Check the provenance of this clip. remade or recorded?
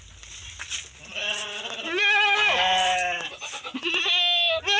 recorded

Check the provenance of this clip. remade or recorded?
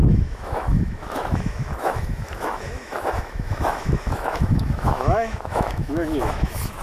remade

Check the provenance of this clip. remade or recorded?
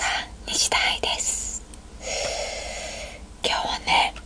recorded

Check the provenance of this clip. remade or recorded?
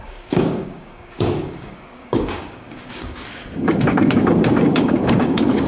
remade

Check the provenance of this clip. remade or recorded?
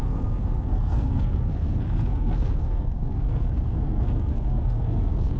remade